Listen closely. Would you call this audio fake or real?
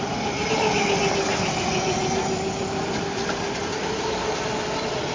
real